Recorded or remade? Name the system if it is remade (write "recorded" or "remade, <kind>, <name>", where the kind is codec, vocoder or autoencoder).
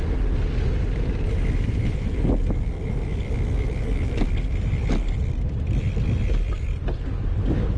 recorded